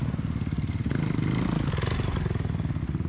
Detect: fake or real real